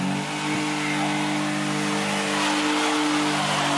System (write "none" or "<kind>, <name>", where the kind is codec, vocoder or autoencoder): none